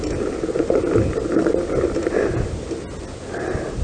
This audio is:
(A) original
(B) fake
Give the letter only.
A